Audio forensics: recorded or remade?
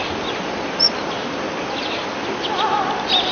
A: recorded